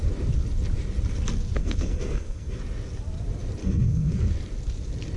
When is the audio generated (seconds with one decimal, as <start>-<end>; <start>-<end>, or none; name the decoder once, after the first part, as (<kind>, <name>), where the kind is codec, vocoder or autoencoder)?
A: 1.6-2.6 (codec, SNAC); 3.6-4.3